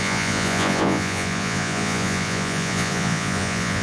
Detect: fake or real fake